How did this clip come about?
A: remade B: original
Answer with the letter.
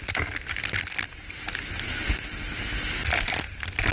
B